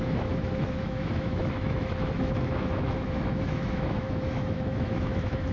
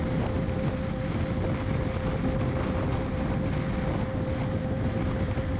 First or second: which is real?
second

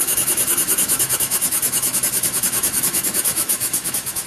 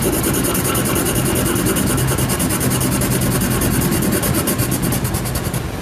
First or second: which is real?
second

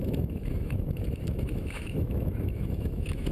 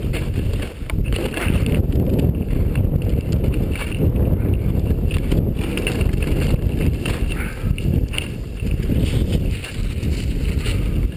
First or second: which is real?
second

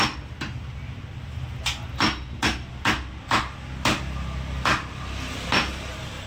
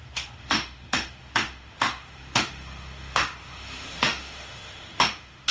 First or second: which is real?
first